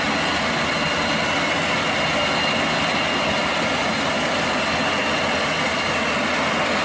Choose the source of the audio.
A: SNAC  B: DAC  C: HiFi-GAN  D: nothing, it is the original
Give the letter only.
D